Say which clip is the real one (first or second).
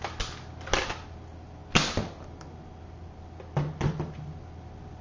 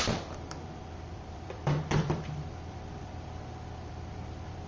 first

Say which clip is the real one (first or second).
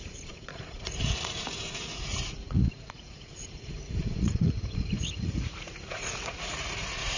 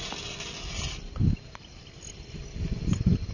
second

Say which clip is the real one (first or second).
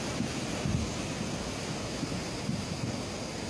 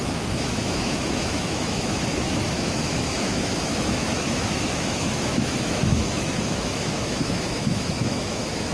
first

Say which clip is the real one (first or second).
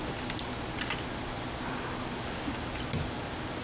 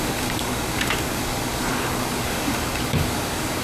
first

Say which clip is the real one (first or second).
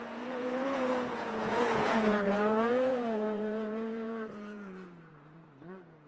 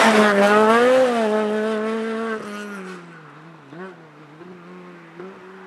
second